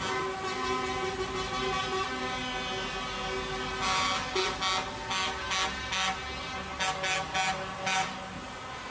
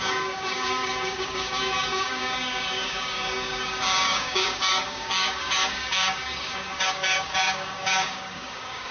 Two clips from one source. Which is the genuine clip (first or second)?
first